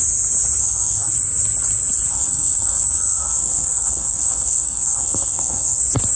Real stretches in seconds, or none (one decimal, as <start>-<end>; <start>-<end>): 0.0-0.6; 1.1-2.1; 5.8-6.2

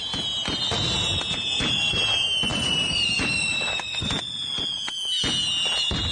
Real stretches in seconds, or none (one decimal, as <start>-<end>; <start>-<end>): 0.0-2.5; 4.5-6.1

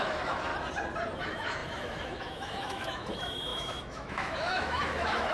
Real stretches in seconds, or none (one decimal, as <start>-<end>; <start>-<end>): 0.5-1.2

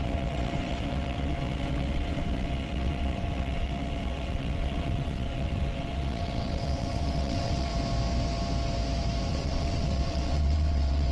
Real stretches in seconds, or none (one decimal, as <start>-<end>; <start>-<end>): 7.7-9.3

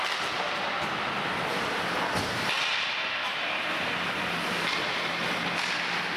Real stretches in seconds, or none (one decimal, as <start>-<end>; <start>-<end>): 0.0-3.2; 3.8-6.2

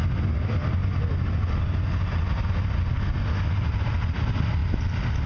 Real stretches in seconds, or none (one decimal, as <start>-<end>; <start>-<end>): 0.0-5.3